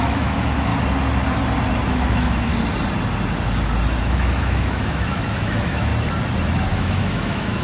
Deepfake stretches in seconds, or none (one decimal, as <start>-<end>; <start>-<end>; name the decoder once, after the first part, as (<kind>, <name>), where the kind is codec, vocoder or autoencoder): 0.0-0.7 (autoencoder, DAC-VAE); 1.9-2.5; 4.0-5.9; 6.7-7.6